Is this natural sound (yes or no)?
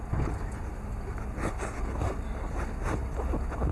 yes